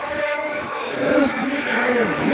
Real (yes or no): no